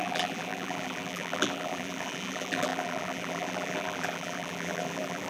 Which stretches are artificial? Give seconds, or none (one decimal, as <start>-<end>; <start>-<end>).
0.0-5.3

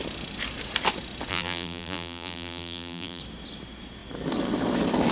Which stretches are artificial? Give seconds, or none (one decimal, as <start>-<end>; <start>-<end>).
1.3-3.2